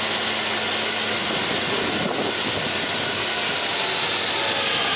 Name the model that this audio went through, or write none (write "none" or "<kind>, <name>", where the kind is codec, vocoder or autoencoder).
none